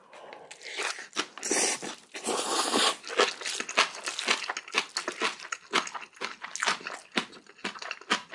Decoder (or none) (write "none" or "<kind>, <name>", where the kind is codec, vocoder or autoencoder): none